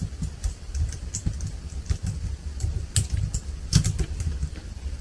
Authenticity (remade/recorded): recorded